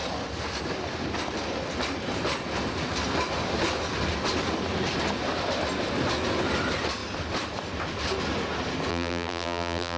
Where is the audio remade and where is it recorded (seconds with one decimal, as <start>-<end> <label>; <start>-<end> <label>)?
0.0-8.9 recorded; 8.9-10.0 remade